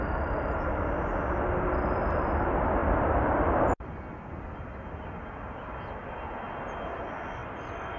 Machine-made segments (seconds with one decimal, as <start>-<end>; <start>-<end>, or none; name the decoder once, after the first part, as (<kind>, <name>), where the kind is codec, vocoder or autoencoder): none

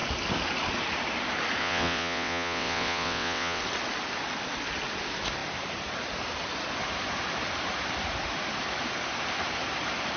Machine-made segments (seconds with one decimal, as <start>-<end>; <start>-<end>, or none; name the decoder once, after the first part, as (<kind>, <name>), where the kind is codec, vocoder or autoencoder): 1.6-3.6 (vocoder, WaveNeXt)

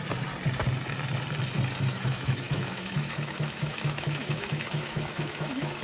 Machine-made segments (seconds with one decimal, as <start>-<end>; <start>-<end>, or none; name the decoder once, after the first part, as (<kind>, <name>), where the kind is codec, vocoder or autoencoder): 1.9-5.8 (autoencoder, DAC-VAE)

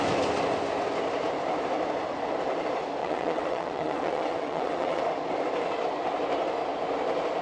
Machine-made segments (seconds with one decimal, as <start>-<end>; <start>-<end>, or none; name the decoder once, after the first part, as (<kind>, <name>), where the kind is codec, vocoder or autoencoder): 3.0-5.0 (vocoder, WaveNeXt)

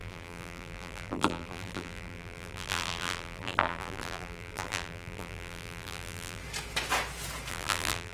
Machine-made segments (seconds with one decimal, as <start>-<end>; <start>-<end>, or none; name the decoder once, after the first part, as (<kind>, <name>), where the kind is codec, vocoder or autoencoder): 0.0-6.4 (vocoder, BigVGAN v2); 7.5-8.1

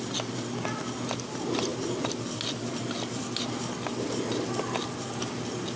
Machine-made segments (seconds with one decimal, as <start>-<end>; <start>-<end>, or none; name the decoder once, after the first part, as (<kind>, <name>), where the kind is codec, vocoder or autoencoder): none

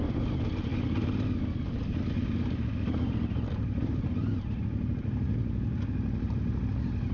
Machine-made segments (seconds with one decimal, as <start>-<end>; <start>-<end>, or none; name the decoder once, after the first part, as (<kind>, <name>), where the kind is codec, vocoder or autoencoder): none